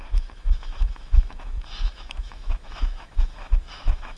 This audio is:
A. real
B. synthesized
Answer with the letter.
B